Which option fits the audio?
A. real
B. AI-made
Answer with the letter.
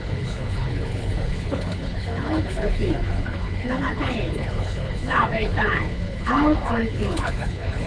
B